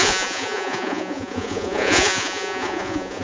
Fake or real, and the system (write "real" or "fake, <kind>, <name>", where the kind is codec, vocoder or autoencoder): fake, vocoder, Vocos